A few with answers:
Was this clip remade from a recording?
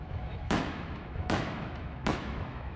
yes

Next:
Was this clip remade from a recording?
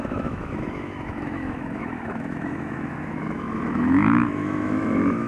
yes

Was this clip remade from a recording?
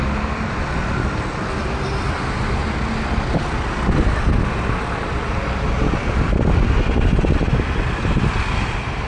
no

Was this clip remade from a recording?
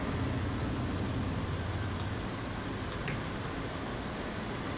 no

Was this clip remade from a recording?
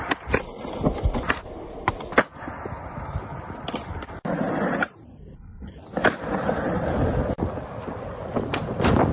yes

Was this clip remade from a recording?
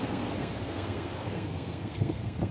yes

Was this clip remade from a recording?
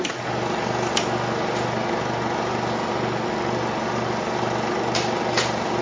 no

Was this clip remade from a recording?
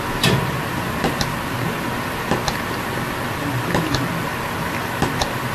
no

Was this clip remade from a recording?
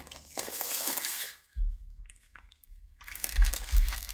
yes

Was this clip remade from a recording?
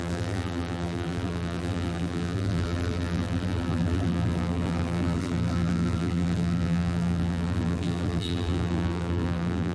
yes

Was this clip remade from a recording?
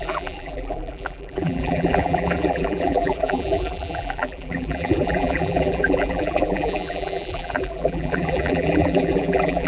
yes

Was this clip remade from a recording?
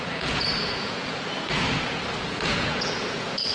yes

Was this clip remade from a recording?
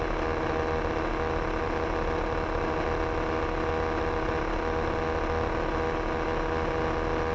no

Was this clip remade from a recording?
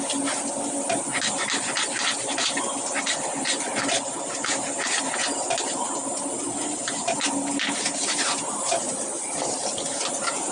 no